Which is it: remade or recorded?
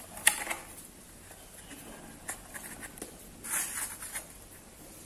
recorded